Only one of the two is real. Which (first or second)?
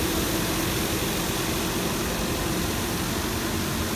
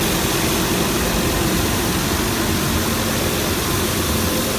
first